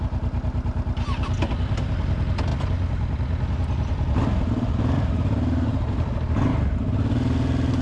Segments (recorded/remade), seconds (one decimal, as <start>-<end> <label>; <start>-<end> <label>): 0.0-7.8 recorded